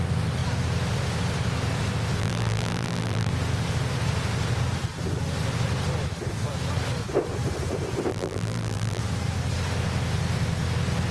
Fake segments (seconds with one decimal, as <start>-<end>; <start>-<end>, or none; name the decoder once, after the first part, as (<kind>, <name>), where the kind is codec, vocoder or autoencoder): 2.2-3.3 (vocoder, BigVGAN v2); 8.1-9.0